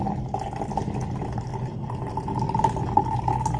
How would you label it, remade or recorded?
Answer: recorded